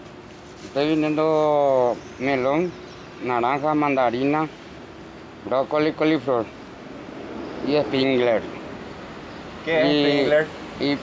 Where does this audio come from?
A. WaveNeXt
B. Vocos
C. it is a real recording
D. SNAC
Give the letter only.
C